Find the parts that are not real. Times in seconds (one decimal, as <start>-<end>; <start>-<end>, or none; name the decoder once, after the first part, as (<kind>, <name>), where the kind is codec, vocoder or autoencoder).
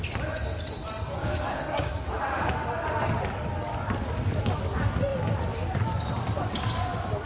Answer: 1.2-1.9 (codec, DAC)